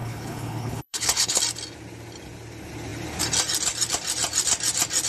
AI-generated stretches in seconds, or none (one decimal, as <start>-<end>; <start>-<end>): 0.0-1.4